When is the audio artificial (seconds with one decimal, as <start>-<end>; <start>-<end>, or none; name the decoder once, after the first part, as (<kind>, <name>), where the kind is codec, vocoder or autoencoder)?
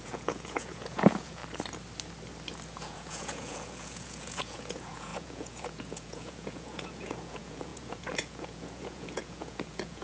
0.0-1.4 (vocoder, Vocos); 2.7-10.0